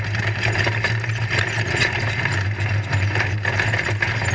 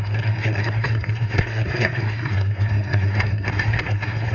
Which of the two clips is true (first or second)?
first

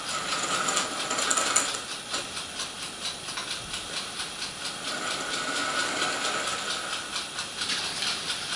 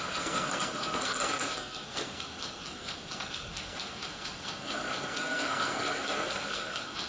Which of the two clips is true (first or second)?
first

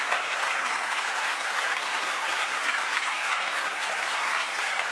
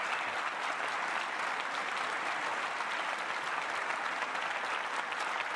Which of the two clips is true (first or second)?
second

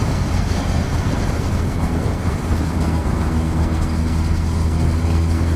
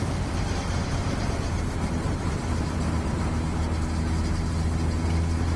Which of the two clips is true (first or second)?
second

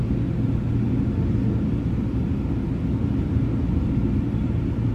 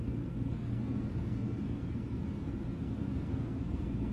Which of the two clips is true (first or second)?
first